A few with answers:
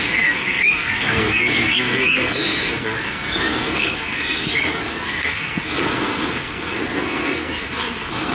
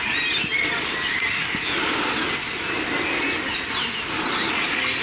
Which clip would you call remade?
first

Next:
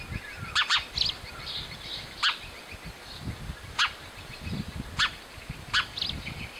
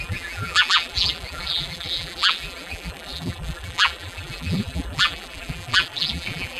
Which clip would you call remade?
second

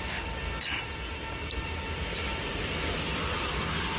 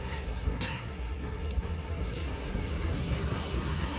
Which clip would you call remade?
second